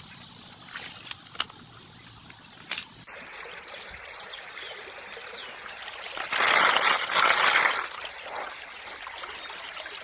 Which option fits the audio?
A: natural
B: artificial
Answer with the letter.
A